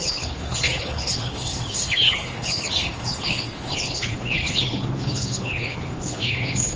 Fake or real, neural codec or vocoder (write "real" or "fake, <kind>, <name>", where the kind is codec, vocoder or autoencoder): fake, codec, HILCodec